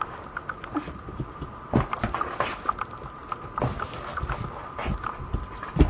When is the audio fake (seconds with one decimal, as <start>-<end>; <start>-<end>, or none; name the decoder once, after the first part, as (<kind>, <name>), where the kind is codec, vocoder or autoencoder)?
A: none